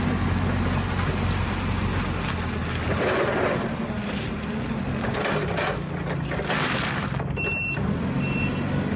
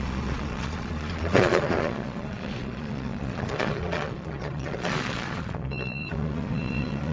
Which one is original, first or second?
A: first